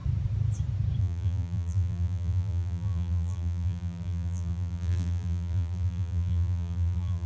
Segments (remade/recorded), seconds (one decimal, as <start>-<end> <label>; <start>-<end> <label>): 0.0-1.0 recorded; 1.0-7.3 remade